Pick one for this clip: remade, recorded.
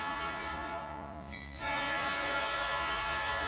remade